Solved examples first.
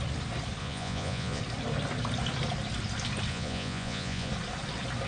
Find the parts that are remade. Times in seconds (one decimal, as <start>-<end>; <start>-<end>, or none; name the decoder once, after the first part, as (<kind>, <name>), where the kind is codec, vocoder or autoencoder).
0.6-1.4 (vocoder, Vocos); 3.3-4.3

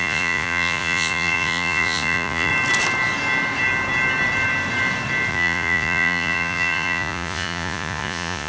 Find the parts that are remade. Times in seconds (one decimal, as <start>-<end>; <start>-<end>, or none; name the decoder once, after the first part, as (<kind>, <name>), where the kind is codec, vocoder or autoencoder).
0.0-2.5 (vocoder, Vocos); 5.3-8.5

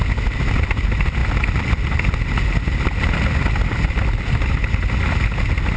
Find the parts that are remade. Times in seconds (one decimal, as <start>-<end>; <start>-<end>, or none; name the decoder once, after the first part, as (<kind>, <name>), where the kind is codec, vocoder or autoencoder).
none

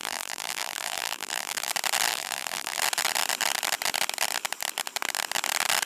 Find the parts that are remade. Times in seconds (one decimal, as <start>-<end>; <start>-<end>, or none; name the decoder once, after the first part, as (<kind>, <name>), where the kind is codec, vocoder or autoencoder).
0.0-1.7 (vocoder, BigVGAN v2); 2.1-2.8

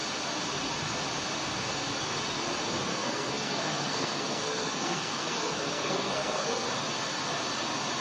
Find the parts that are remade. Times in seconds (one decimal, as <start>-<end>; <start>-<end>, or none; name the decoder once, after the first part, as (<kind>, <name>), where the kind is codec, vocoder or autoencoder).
2.9-6.7 (codec, SNAC)

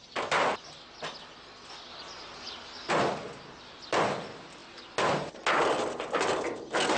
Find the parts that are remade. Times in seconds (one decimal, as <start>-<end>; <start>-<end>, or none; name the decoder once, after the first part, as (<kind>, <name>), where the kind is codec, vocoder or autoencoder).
1.9-2.9 (vocoder, BigVGAN v2)

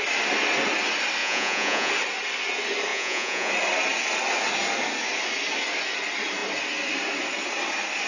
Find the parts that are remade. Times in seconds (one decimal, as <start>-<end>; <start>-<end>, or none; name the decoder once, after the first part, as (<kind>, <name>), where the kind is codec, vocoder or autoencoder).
1.2-1.9 (vocoder, Vocos); 2.9-3.5

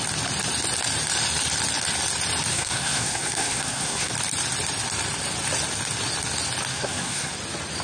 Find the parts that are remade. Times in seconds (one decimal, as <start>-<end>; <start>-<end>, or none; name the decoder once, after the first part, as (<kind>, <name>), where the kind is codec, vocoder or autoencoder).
2.5-4.1 (codec, SNAC); 6.7-7.3